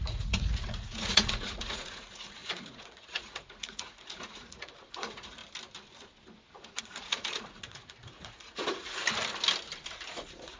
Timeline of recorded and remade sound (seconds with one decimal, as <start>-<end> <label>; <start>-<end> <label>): 0.0-5.4 remade; 5.4-6.8 recorded; 6.8-9.0 remade; 9.0-10.2 recorded; 10.2-10.6 remade